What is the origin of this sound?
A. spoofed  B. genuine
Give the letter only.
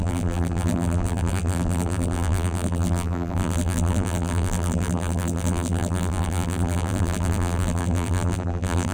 A